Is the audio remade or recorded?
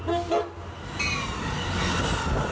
recorded